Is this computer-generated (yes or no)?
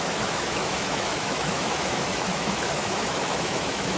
yes